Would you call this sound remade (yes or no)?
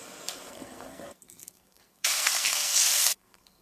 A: yes